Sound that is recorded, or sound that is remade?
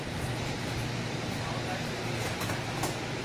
recorded